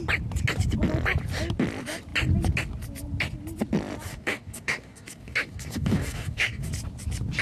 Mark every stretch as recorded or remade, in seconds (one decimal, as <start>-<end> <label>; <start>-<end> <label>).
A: 0.0-4.1 recorded; 4.1-6.7 remade; 6.7-7.4 recorded